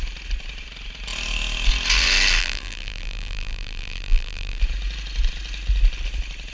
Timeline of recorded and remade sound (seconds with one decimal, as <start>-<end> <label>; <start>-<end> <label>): 0.0-2.4 recorded; 2.4-4.6 remade; 4.6-6.5 recorded